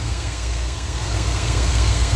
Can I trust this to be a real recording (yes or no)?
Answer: no